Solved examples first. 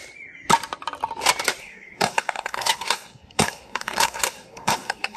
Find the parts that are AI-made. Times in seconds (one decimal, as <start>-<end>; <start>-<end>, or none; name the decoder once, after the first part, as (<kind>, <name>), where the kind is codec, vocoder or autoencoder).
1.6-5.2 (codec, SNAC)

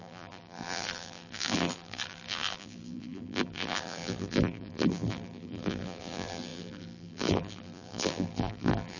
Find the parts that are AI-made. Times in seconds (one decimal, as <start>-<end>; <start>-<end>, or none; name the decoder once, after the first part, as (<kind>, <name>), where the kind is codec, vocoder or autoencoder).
0.0-9.0 (vocoder, BigVGAN v2)

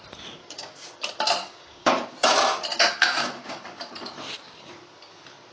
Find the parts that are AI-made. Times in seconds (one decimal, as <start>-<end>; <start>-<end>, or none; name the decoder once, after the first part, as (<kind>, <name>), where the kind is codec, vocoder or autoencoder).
0.4-0.9 (codec, DAC); 1.4-2.0; 2.7-3.6

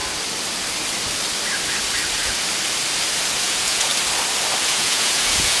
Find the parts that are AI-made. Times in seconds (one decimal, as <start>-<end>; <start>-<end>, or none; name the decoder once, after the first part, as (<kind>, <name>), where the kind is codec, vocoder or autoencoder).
3.4-3.9 (vocoder, Vocos); 4.6-5.6